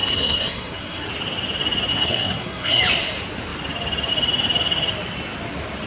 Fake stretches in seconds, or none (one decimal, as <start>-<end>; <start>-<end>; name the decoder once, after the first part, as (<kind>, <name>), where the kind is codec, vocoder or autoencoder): 0.0-1.1 (codec, SNAC); 1.9-2.8